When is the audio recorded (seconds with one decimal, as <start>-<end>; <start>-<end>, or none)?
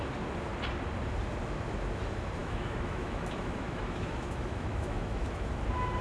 0.0-2.4; 5.5-6.0